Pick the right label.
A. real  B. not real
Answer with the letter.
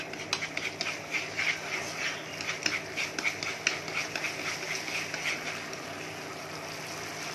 A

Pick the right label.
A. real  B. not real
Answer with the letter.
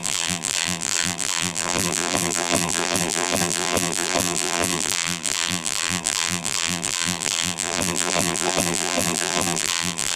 B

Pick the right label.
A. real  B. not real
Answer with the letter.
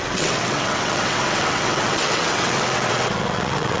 B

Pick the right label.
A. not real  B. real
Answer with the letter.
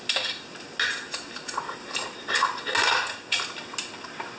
B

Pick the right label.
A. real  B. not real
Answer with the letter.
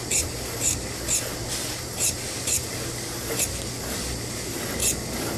A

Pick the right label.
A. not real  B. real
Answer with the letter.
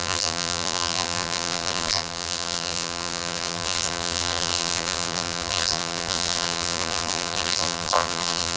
A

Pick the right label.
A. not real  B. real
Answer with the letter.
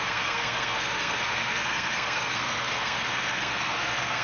A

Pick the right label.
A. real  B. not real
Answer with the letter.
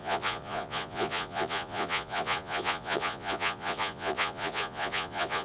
B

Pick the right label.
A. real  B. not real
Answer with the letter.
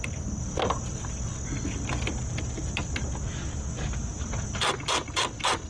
A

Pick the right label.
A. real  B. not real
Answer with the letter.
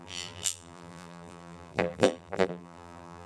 B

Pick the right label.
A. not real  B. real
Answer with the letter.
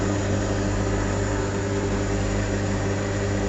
B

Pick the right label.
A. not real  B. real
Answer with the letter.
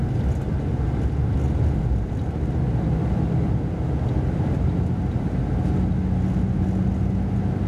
B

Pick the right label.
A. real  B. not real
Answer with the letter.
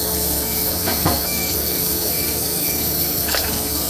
B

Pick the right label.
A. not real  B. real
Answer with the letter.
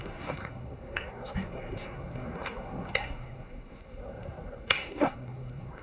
A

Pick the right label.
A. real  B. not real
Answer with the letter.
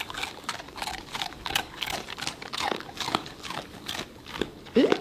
B